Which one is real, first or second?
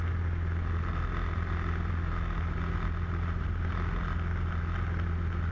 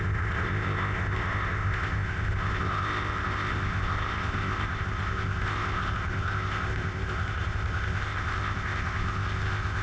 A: first